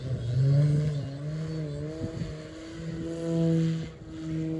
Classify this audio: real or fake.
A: real